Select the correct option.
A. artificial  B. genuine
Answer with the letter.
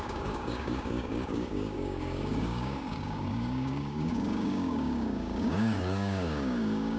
A